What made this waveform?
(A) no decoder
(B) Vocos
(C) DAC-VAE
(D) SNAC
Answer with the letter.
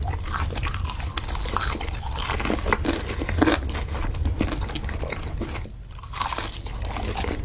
A